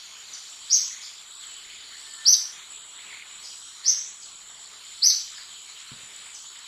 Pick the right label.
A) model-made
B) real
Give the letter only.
B